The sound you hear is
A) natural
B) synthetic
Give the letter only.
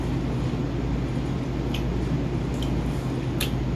A